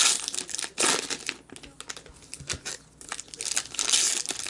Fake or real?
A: real